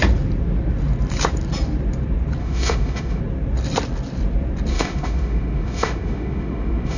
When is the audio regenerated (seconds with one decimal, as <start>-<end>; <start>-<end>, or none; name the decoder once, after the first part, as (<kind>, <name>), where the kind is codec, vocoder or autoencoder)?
2.4-3.2 (autoencoder, DAC-VAE); 4.7-7.0